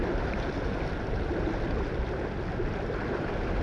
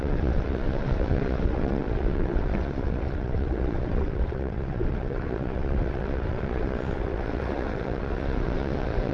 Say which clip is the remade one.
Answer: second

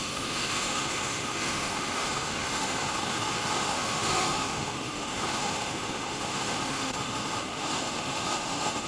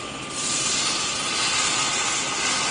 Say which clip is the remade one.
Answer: first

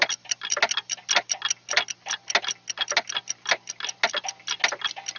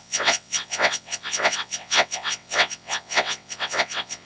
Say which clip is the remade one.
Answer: second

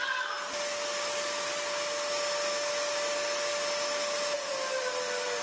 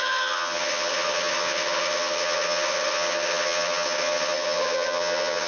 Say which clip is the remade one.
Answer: second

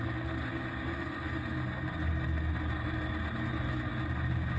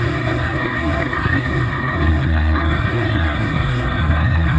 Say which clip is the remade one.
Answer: second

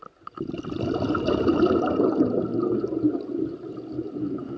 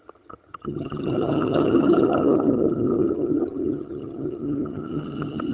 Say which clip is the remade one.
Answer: second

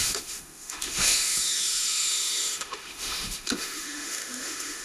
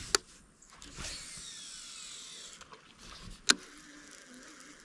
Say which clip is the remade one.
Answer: first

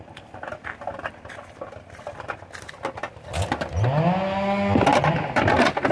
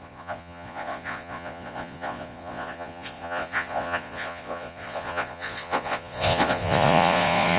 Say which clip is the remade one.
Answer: second